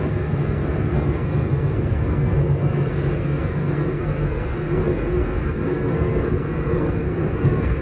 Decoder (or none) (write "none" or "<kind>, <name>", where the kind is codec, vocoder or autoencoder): codec, SNAC